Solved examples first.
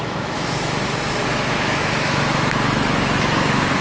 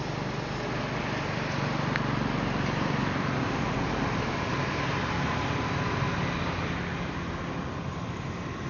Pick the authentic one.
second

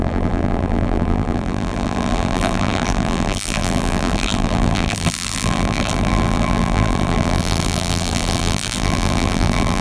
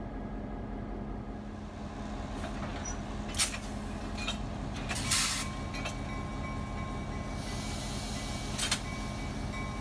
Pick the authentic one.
second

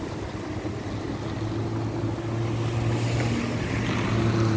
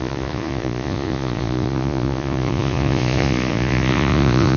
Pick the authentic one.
first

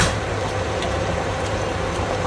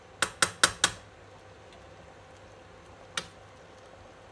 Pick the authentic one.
second